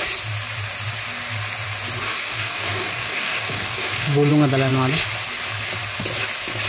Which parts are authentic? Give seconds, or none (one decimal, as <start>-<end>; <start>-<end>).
0.0-2.0; 4.3-6.7